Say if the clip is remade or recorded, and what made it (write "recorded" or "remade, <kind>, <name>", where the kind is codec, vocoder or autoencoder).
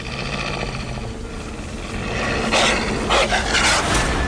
recorded